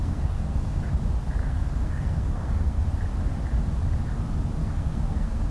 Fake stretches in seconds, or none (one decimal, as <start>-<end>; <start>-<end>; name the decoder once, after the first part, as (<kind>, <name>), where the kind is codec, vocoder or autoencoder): 0.0-0.9 (codec, SNAC); 1.4-2.8; 4.6-5.5